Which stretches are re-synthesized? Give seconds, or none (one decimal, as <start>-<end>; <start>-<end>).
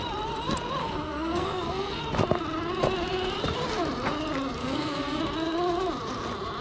0.8-2.0; 4.6-5.2